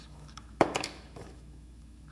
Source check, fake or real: fake